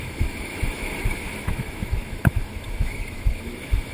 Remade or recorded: remade